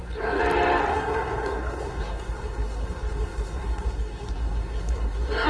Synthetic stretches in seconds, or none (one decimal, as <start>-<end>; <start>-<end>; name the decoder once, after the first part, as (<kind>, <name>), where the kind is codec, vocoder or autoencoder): 0.0-0.4 (codec, SNAC); 0.9-5.5